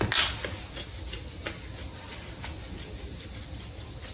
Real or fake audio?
real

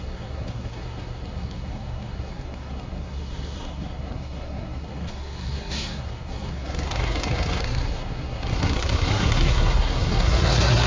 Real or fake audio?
fake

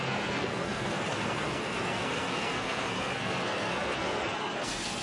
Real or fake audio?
fake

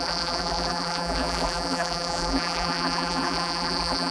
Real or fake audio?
fake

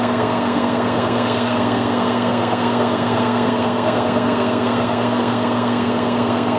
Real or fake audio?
fake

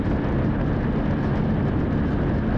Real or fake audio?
real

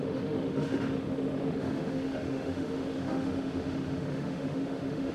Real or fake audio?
fake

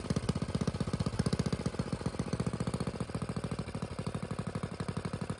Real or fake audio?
real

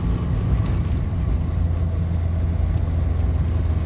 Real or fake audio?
real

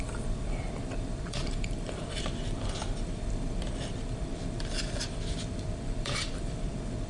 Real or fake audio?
fake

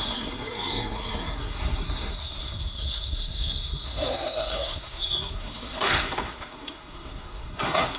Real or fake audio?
fake